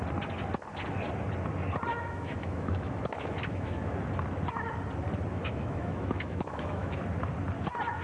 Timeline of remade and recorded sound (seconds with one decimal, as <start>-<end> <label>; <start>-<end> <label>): 0.0-1.9 recorded; 1.9-3.9 remade; 3.9-5.3 recorded; 5.3-7.0 remade; 7.0-8.0 recorded